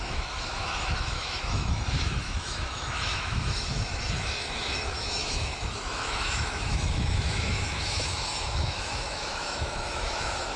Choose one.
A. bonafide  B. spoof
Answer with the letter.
B